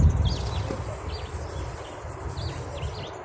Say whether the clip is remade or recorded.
recorded